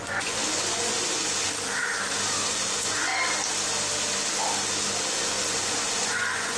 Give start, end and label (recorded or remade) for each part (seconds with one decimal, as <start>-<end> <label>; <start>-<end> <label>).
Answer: 0.0-0.9 remade; 0.9-2.4 recorded; 2.4-3.1 remade; 3.1-5.1 recorded; 5.1-6.6 remade